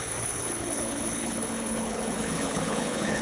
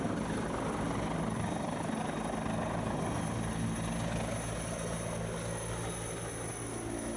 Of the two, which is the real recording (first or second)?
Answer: second